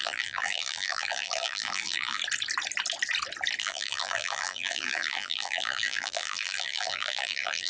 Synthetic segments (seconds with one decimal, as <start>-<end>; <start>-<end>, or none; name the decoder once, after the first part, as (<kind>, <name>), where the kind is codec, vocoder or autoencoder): 0.0-2.2 (vocoder, BigVGAN v2); 3.6-7.7